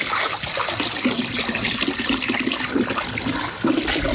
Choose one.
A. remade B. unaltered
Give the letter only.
B